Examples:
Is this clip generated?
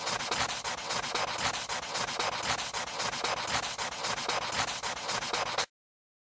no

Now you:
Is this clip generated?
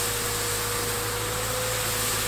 no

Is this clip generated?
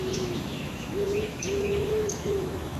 yes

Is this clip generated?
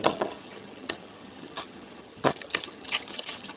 yes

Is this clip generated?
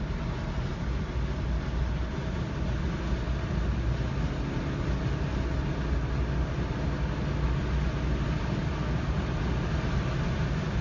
no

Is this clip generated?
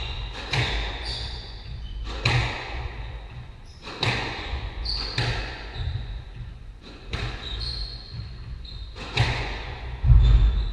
yes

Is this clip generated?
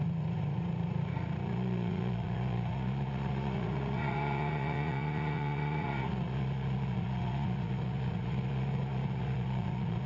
yes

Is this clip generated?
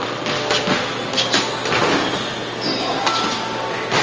no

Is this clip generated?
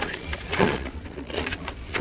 yes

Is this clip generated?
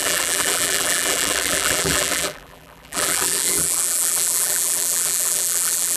yes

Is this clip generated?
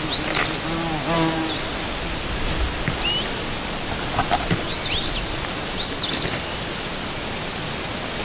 no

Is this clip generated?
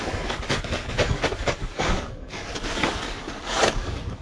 yes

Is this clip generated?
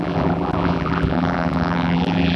yes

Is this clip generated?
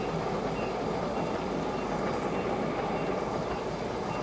no